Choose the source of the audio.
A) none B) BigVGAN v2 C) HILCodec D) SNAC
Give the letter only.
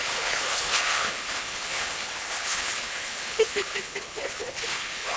C